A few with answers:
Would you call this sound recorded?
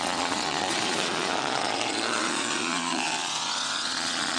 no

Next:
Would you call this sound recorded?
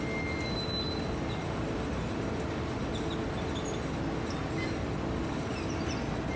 yes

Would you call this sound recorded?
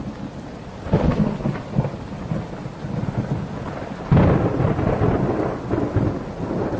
yes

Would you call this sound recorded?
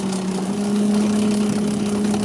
yes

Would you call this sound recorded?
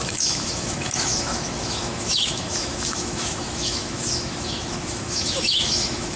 no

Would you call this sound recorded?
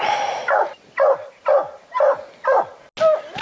yes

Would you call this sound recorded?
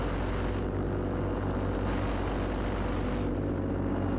yes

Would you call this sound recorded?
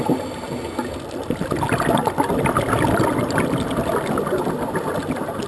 yes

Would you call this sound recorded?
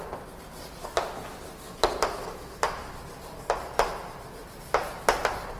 yes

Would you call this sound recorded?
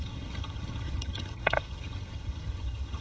no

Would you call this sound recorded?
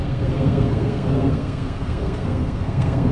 no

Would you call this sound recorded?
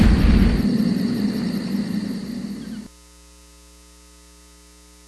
yes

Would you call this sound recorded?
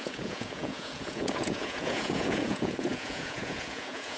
no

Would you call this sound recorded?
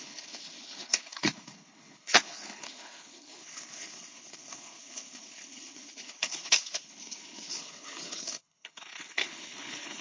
no